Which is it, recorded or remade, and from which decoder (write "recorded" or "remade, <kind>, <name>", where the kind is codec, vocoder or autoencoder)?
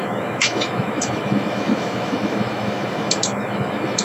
remade, autoencoder, DAC-VAE